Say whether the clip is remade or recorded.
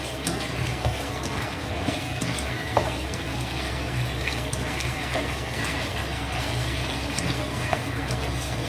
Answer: remade